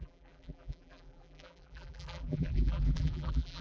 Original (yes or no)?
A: no